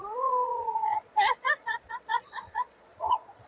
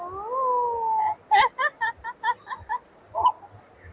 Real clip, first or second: second